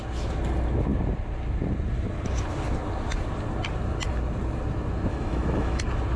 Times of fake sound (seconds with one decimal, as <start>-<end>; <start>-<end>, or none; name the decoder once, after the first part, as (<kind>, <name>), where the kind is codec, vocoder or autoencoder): 5.1-5.8 (autoencoder, DAC-VAE)